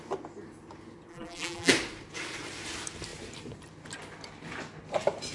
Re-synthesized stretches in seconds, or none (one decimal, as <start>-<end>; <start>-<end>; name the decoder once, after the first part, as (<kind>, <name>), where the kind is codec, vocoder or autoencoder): 1.1-1.7 (vocoder, BigVGAN v2)